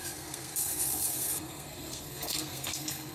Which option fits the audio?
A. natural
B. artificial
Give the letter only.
B